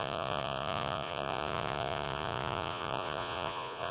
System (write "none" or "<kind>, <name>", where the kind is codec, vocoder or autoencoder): vocoder, Vocos